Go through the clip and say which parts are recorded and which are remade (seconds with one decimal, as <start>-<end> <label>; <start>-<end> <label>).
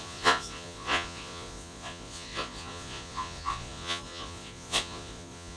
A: 0.0-5.6 remade